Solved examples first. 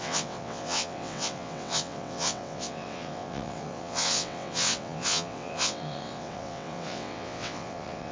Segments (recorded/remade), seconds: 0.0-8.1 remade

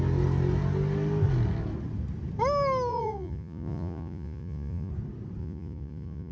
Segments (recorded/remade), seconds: 0.0-2.9 recorded; 2.9-4.9 remade; 4.9-5.4 recorded; 5.4-6.3 remade

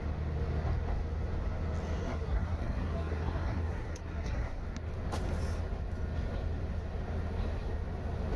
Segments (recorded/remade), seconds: 0.0-2.0 recorded; 2.0-4.6 remade; 4.6-8.4 recorded